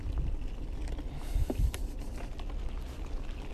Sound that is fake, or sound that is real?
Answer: real